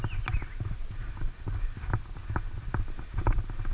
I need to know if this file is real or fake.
real